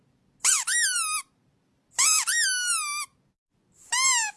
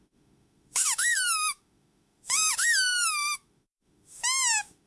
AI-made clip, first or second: second